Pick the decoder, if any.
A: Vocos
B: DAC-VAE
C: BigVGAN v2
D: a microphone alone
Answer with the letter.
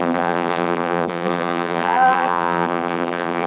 C